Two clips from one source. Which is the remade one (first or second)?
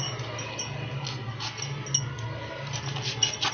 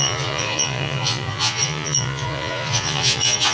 second